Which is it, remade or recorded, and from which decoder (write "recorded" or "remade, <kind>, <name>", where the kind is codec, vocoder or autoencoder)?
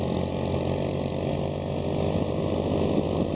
recorded